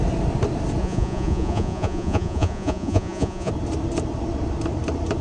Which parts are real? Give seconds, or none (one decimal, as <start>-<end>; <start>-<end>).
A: 0.0-0.8; 3.5-5.2